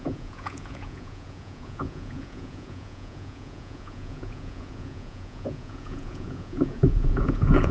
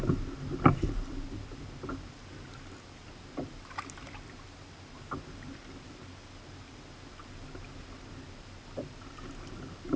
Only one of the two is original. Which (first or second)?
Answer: second